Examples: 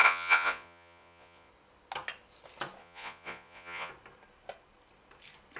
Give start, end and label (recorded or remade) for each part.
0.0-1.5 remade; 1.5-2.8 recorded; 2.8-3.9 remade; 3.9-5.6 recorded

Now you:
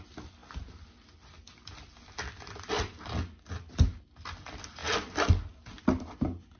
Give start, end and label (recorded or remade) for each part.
0.0-6.6 recorded

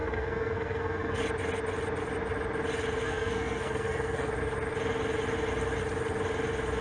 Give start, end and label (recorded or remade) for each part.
0.0-1.2 remade; 1.2-3.0 recorded; 3.0-4.3 remade; 4.3-6.8 recorded

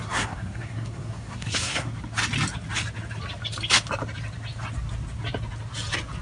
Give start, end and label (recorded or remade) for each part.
0.0-1.9 remade; 1.9-6.2 recorded

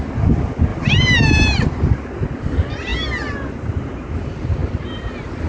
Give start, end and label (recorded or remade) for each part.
0.0-5.5 recorded

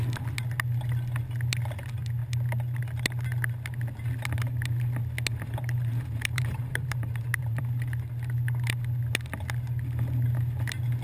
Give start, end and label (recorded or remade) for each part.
0.0-5.3 recorded; 5.3-7.6 remade; 7.6-11.0 recorded

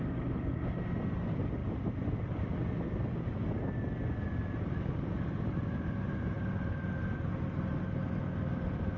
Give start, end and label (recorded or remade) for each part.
0.0-9.0 recorded